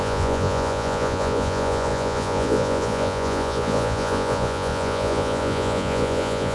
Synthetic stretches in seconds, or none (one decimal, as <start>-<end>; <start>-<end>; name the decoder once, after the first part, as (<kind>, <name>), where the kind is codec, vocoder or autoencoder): 0.0-6.5 (vocoder, Vocos)

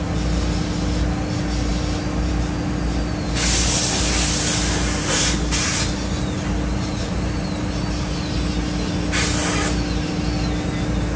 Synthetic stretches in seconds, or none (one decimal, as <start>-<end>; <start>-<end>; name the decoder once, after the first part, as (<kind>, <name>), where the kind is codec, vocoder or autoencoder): none